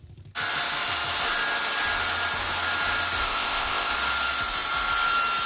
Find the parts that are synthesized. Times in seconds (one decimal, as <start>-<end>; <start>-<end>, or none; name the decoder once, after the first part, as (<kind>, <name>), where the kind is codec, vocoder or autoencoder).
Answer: 3.2-3.9 (codec, ZipCodec)

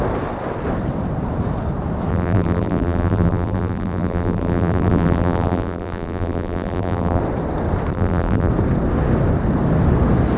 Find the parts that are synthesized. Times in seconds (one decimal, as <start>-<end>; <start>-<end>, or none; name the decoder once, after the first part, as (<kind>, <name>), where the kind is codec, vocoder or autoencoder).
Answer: 2.1-7.2 (vocoder, BigVGAN v2); 7.9-8.5

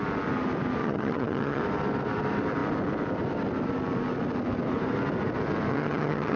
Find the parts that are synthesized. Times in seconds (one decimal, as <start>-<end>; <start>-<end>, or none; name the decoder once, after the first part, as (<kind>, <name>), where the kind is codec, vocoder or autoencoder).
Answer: 0.8-1.6 (vocoder, HiFi-GAN); 5.7-6.4

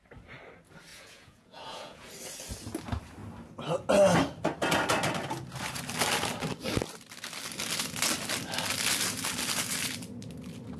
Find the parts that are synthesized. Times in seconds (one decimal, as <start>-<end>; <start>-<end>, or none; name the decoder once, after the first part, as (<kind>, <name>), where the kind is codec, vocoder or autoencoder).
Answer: 0.9-2.1 (vocoder, Vocos)

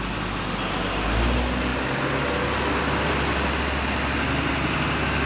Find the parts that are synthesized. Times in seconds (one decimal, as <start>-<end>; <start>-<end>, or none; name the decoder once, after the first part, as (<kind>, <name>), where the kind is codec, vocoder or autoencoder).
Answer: none